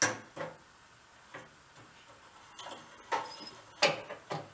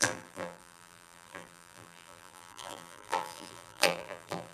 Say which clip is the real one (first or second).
first